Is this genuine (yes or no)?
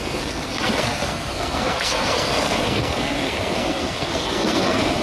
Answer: no